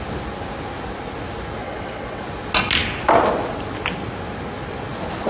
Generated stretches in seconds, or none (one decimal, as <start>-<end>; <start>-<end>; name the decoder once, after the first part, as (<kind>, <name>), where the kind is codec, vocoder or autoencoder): 1.6-2.2 (vocoder, WaveNeXt)